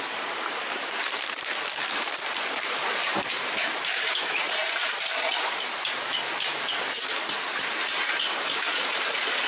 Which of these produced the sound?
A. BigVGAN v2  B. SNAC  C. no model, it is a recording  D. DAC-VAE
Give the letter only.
A